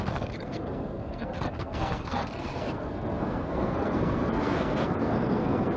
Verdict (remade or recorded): remade